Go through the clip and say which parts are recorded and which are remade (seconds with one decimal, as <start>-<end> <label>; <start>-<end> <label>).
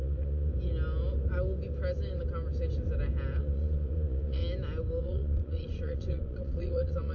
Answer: 0.0-0.5 remade; 0.5-3.4 recorded; 3.4-4.4 remade; 4.4-5.0 recorded; 5.0-7.1 remade